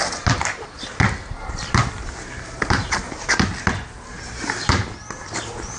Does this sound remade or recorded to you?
recorded